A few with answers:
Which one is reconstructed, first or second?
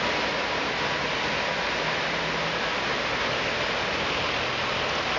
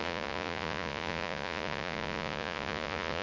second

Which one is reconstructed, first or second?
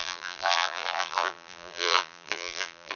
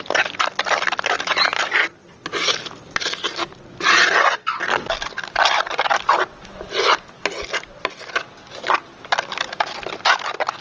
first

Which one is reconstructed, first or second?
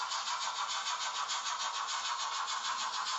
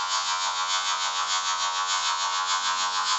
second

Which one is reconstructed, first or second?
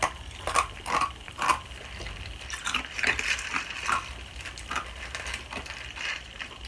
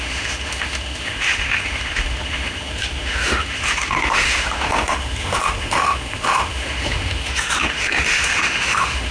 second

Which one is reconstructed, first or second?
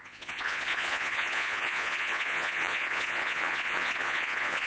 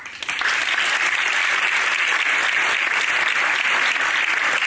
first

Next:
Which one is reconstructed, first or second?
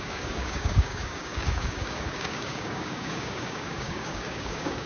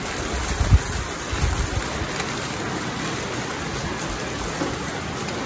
first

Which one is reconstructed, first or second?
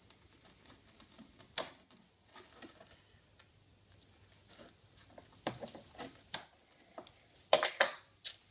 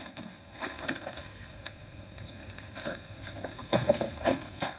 second